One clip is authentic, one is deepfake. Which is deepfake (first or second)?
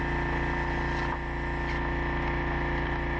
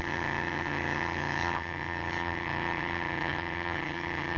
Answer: second